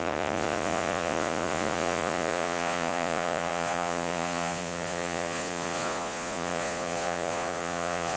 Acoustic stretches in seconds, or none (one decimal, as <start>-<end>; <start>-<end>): none